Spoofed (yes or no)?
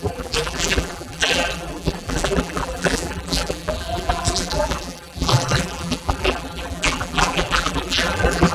yes